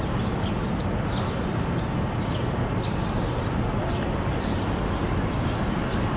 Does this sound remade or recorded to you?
recorded